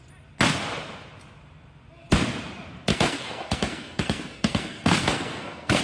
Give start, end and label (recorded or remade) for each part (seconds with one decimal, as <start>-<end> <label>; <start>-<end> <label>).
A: 0.0-2.9 recorded; 2.9-5.8 remade